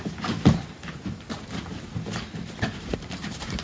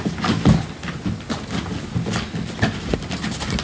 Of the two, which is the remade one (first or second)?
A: first